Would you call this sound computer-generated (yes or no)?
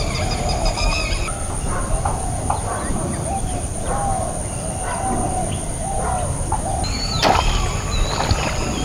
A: no